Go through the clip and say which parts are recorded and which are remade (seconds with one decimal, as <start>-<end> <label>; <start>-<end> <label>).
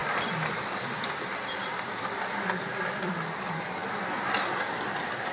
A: 0.0-3.8 remade; 3.8-4.4 recorded; 4.4-5.3 remade